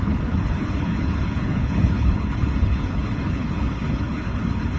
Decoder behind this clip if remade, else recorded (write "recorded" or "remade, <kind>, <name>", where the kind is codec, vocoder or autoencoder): remade, codec, HILCodec